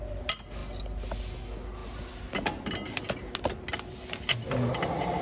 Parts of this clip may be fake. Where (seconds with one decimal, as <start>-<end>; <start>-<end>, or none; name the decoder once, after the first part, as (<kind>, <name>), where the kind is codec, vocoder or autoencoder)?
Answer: none